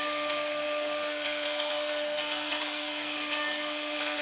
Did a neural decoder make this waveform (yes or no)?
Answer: yes